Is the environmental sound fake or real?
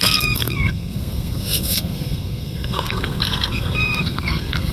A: fake